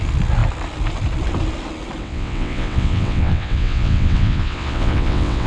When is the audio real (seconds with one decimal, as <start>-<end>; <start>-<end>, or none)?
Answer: 0.0-2.0